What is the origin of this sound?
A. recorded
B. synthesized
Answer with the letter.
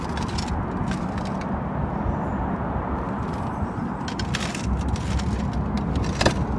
A